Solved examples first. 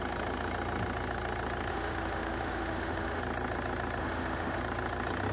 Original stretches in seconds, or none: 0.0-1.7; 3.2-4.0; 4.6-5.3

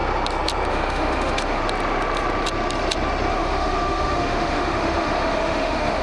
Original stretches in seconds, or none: 0.0-0.7; 1.6-3.3

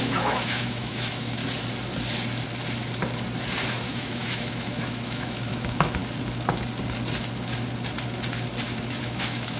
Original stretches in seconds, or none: 1.4-3.7; 6.0-9.0

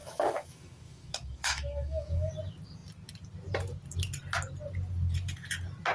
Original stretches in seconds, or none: 2.3-5.9

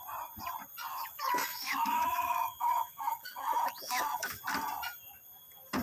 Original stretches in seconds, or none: 0.0-0.9; 4.4-5.8

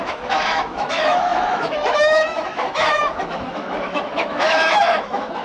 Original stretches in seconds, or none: none

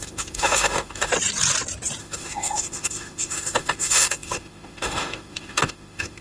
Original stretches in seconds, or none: 1.1-2.0

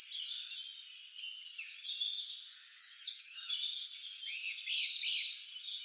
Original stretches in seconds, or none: 0.0-2.8; 3.5-5.8